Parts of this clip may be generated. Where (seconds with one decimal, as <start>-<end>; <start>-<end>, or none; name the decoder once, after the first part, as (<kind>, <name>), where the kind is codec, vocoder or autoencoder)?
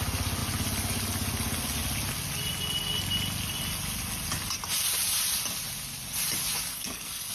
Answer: 6.7-7.3 (codec, SNAC)